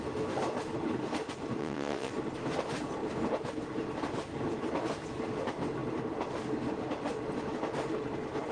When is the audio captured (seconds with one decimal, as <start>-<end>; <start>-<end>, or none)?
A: 0.0-1.6; 2.1-8.5